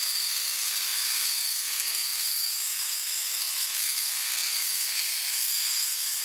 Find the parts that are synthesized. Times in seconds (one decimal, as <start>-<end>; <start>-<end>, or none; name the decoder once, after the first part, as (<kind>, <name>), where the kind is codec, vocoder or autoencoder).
0.0-6.2 (codec, SNAC)